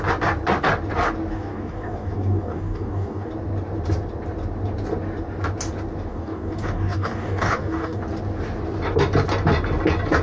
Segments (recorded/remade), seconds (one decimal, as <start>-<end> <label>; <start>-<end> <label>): 0.0-1.3 recorded; 1.3-3.3 remade; 3.3-6.1 recorded; 6.1-8.0 remade; 8.0-10.2 recorded